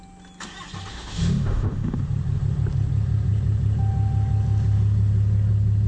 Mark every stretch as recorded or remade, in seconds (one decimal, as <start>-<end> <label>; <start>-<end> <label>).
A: 0.0-0.9 recorded; 0.9-2.0 remade; 2.0-5.9 recorded